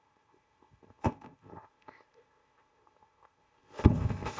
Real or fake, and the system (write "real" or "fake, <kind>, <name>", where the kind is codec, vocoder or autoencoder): fake, codec, ZipCodec